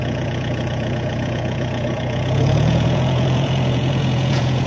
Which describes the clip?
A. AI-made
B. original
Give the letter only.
A